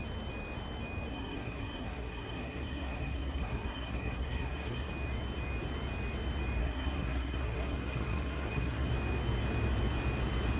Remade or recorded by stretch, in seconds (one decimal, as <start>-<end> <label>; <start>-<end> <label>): 0.0-1.1 recorded; 1.1-4.9 remade; 4.9-6.6 recorded; 6.6-8.9 remade; 8.9-10.6 recorded